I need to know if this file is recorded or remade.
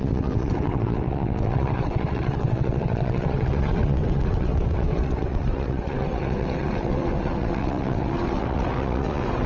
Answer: remade